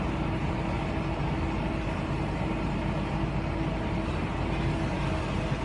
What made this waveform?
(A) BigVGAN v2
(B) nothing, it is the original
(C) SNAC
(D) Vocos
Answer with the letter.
B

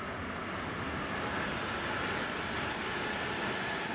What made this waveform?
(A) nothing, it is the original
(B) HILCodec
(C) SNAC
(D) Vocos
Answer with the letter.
A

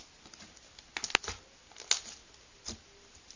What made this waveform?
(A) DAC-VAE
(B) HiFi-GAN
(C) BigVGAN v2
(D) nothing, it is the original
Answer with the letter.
D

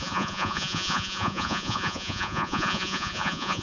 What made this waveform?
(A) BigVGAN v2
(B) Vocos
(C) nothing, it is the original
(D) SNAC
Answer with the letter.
B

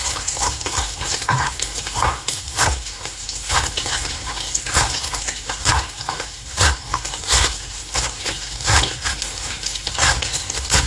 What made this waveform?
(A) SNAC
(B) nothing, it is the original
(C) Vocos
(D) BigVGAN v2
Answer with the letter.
A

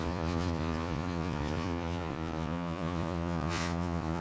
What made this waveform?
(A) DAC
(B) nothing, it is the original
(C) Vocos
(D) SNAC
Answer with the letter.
C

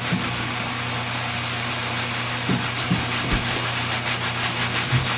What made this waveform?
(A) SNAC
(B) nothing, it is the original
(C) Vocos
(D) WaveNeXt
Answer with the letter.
B